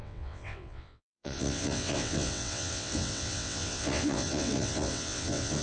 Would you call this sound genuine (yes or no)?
no